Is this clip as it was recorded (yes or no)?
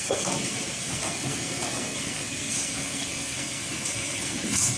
no